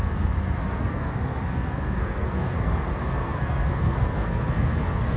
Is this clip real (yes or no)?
no